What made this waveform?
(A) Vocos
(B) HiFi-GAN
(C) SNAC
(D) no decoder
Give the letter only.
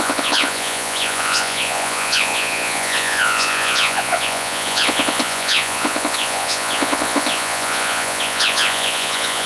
A